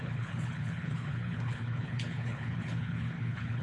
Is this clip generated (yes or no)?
yes